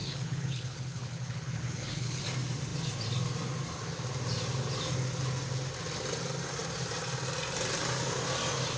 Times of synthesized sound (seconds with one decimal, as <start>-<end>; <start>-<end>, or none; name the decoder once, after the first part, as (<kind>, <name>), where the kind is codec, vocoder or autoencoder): 0.0-2.2 (codec, HILCodec)